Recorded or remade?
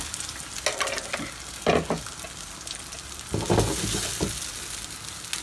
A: recorded